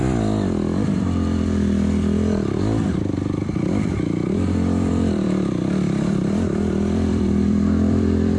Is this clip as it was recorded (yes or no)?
no